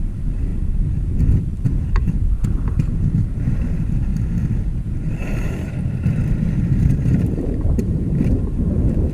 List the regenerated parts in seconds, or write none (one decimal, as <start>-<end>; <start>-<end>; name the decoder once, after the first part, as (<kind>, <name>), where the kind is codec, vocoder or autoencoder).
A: 0.0-4.1 (vocoder, BigVGAN v2); 4.6-9.1